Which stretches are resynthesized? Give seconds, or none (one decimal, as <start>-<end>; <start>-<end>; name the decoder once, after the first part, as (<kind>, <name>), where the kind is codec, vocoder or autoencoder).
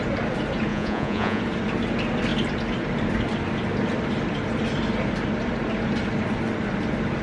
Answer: 0.7-1.4 (vocoder, Vocos)